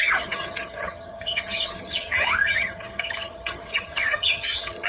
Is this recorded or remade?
remade